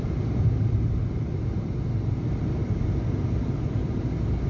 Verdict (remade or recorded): recorded